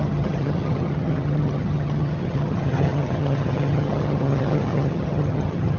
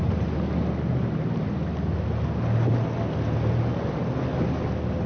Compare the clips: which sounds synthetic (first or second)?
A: first